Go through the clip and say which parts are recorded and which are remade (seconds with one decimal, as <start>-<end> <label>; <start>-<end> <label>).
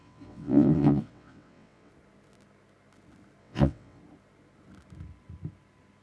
0.0-1.9 remade; 1.9-3.4 recorded; 3.4-4.0 remade; 4.0-6.0 recorded